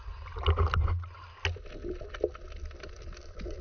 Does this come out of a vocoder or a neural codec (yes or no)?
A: no